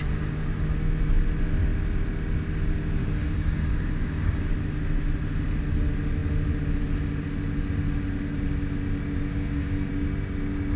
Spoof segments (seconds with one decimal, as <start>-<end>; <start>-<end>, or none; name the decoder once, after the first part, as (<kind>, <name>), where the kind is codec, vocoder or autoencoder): 3.0-4.5 (codec, DAC); 9.3-9.9